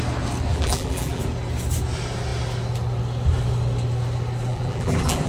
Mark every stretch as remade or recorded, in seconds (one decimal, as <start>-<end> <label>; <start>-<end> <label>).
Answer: 0.0-0.5 recorded; 0.5-1.2 remade; 1.2-4.5 recorded; 4.5-5.3 remade